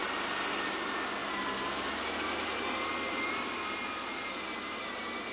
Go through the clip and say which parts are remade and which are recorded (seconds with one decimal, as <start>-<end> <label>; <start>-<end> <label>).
0.0-5.3 recorded